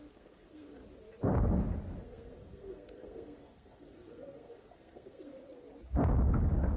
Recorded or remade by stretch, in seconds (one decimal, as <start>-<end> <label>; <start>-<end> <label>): 0.0-0.8 remade; 0.8-2.0 recorded; 2.0-5.3 remade; 5.3-6.8 recorded